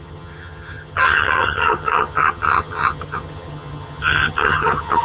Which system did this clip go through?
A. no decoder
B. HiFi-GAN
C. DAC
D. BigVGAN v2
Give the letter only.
B